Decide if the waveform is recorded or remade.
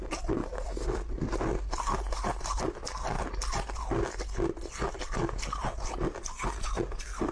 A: recorded